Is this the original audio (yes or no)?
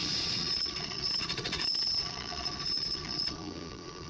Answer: no